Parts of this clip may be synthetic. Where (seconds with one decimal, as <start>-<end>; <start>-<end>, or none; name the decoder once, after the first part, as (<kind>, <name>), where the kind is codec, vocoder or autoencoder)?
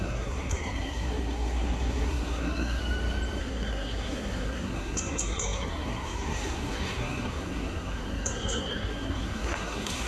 0.0-2.8 (codec, SNAC); 3.4-10.1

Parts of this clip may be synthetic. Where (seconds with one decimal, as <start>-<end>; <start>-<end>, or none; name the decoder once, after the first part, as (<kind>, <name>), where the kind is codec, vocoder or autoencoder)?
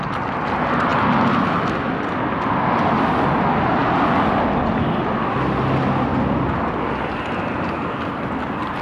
none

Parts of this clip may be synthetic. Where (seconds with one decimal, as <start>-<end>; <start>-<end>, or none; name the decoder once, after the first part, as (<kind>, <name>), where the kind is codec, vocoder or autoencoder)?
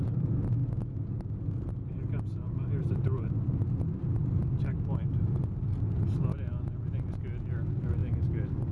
none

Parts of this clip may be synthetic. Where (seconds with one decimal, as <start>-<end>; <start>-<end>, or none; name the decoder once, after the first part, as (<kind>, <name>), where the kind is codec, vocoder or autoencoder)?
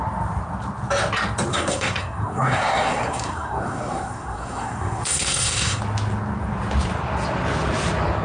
1.5-5.8 (codec, SNAC)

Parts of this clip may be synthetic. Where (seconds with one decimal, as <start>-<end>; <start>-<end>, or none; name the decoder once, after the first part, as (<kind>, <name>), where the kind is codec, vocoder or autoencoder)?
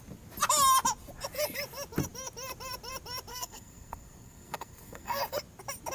3.3-5.2 (codec, SNAC)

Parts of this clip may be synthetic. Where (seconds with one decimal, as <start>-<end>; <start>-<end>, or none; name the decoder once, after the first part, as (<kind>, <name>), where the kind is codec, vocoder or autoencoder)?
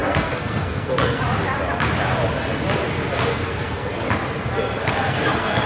0.0-1.2 (codec, SNAC); 3.3-3.9; 4.8-5.7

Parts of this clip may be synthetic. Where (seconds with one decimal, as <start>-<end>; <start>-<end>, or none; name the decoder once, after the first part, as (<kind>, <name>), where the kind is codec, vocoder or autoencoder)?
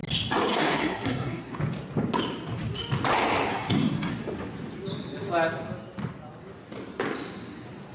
0.5-1.6 (codec, SNAC); 3.5-4.1